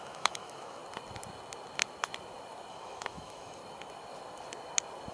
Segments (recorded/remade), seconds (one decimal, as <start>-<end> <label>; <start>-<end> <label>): 0.0-0.8 remade; 0.8-2.7 recorded; 2.7-3.6 remade; 3.6-5.1 recorded